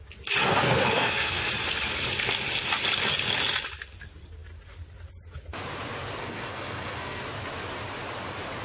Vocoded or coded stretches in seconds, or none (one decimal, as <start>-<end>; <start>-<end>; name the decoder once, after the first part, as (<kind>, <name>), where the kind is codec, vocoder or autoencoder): 0.4-1.5 (codec, SNAC); 6.2-7.2